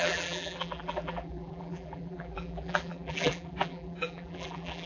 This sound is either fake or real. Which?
fake